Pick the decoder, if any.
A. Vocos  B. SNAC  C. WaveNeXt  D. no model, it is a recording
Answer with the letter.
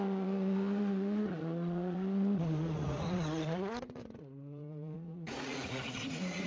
A